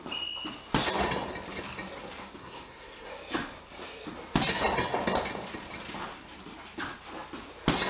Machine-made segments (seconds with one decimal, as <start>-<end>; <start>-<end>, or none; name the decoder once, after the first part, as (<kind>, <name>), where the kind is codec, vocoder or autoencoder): 2.4-3.1 (codec, SNAC)